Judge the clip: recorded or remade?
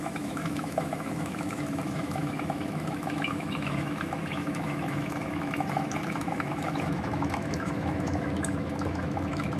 remade